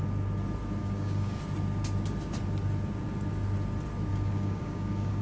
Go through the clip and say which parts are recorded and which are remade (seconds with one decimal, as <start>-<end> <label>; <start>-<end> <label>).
0.0-0.8 recorded; 0.8-1.4 remade; 1.4-4.1 recorded; 4.1-5.2 remade